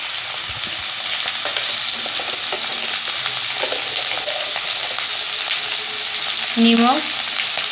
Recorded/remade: recorded